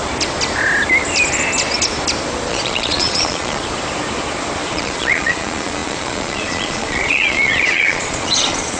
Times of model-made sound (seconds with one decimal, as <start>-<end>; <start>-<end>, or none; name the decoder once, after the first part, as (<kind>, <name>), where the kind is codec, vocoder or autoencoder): 2.5-3.6 (vocoder, Vocos); 4.7-8.8